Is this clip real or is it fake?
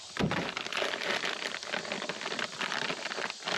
real